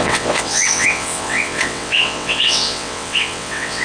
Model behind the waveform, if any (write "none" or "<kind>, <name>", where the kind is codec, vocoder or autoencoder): vocoder, WaveNeXt